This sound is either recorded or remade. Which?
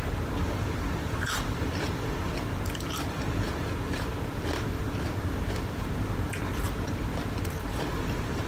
remade